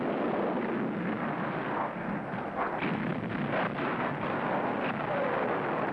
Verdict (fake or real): real